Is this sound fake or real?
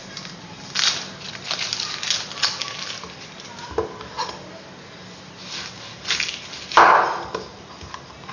real